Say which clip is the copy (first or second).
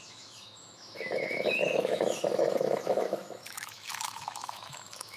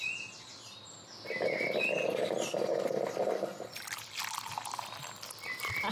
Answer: first